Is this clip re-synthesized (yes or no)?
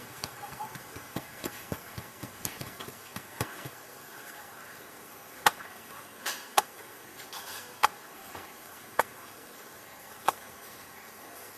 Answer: yes